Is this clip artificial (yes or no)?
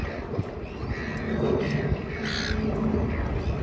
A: no